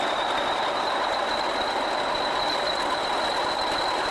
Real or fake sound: real